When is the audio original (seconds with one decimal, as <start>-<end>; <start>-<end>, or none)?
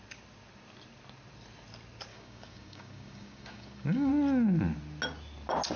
0.0-2.1; 4.1-5.8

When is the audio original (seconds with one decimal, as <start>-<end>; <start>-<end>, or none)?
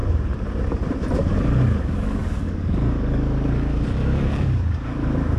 0.0-1.1